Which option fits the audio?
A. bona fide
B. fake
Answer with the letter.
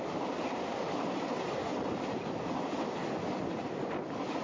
A